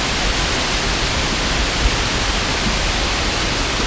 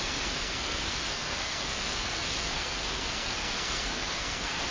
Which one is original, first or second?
first